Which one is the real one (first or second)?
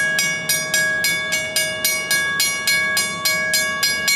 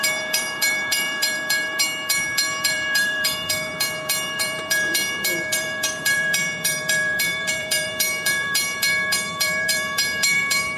first